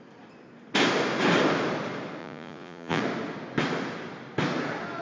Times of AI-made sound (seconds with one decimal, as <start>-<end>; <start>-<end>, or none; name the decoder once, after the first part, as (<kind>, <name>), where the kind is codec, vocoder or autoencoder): 2.2-3.0 (vocoder, Vocos)